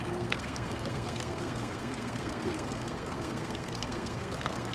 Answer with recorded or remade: remade